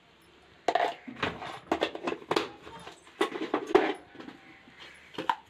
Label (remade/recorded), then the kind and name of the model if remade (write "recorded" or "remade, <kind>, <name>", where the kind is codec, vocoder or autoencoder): recorded